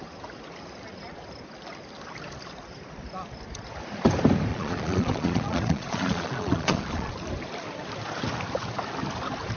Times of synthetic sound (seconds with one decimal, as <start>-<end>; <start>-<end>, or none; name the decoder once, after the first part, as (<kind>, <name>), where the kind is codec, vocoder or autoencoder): 4.5-7.1 (vocoder, Vocos)